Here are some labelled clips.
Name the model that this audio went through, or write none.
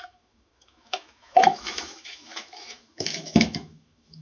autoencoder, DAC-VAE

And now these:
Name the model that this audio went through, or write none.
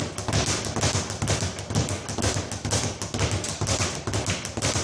none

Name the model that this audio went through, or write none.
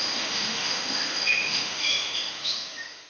autoencoder, DAC-VAE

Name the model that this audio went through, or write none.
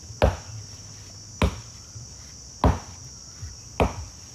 none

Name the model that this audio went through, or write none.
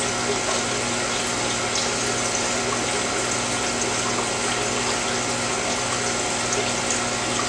none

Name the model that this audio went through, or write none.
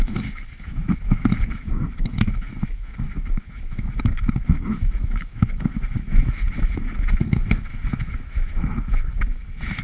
autoencoder, DAC-VAE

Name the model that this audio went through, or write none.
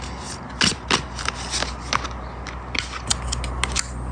none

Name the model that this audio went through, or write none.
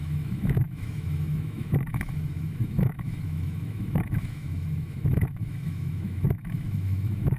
autoencoder, DAC-VAE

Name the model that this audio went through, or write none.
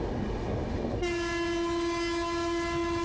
none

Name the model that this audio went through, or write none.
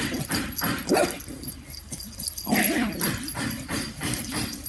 none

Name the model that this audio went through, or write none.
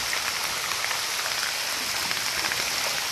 none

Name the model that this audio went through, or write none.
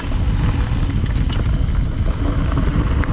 none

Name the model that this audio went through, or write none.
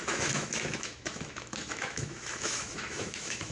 autoencoder, DAC-VAE